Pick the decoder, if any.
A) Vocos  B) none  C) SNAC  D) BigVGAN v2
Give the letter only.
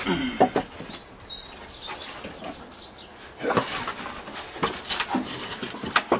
B